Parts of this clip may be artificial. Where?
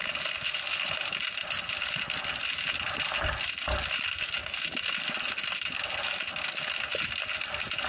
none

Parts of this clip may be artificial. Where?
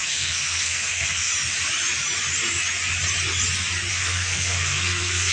0.0-1.3 (codec, SNAC); 3.9-5.3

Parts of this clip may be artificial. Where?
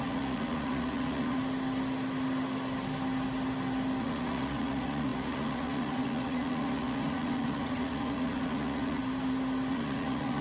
0.0-1.4 (vocoder, Vocos); 4.0-9.0; 9.7-10.4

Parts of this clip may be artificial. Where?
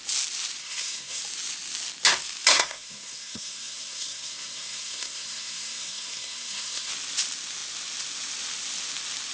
0.6-1.2 (codec, SNAC); 2.5-6.9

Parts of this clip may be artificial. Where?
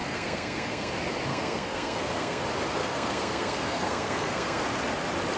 0.0-0.9 (codec, SNAC); 1.3-2.4; 2.8-4.6